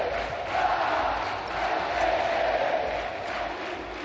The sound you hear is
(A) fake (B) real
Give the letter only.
B